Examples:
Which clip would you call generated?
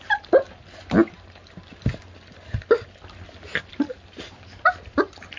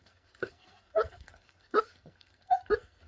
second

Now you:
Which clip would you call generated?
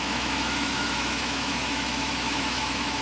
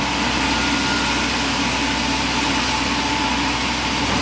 first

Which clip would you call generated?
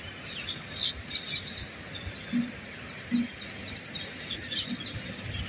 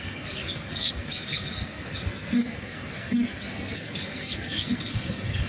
second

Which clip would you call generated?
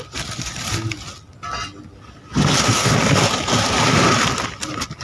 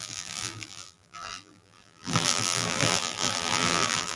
second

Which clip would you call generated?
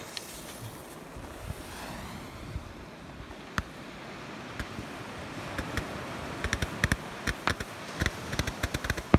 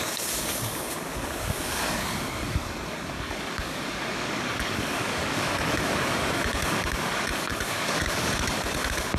second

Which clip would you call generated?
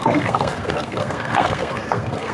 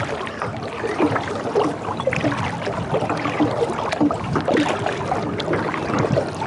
first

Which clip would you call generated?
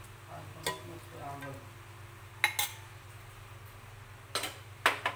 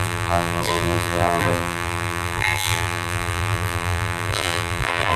second